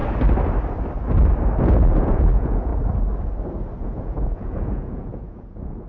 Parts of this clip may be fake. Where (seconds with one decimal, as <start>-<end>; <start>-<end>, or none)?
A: 1.6-2.7; 3.8-5.9